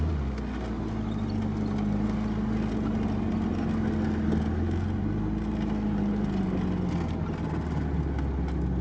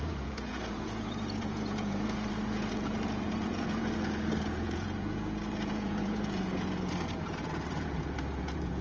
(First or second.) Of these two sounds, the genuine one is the first